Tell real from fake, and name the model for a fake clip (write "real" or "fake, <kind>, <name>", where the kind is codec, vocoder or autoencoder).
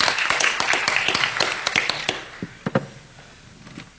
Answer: real